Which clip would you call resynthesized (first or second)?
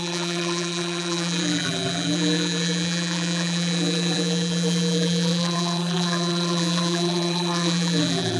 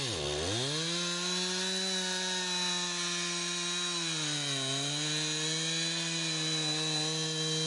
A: first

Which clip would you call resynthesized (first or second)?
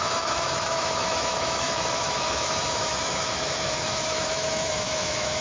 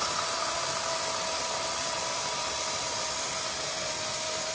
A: first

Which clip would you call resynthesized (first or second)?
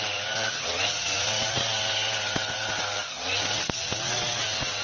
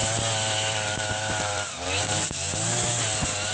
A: first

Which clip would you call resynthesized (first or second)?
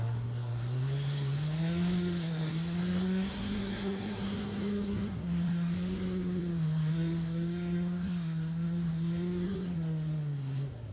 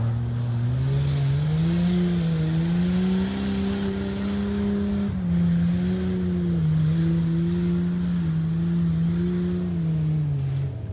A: first